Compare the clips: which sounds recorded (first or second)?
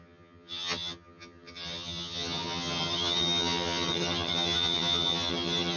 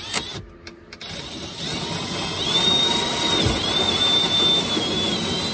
second